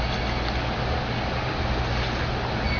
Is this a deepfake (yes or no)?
no